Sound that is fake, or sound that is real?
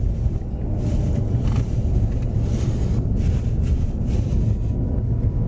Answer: real